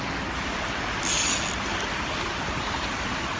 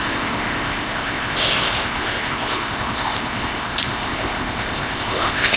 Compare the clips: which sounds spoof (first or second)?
second